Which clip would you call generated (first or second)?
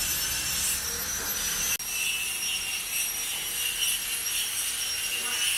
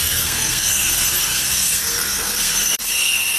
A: second